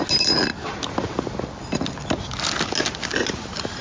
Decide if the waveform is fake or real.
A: real